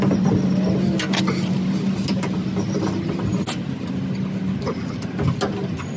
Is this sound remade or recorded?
recorded